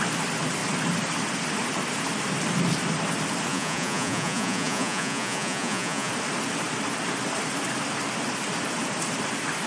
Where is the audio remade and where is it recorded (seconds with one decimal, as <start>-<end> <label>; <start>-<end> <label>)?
0.0-3.5 recorded; 3.5-6.1 remade; 6.1-9.7 recorded

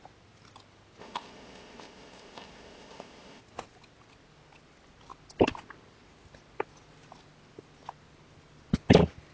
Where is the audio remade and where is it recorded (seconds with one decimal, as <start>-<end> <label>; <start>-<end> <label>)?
0.0-1.0 recorded; 1.0-3.4 remade; 3.4-9.3 recorded